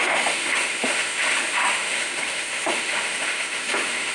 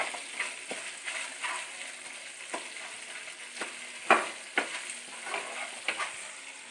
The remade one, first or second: first